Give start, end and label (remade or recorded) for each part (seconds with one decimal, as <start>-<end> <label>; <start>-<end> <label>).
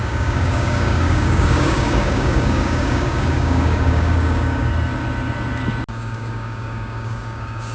0.0-4.7 remade; 4.7-5.9 recorded; 5.9-7.7 remade